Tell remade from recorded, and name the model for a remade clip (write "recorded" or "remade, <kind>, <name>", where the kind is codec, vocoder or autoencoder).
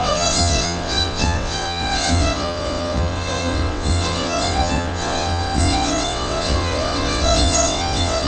remade, vocoder, WaveNeXt